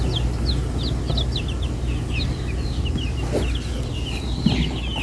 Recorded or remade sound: recorded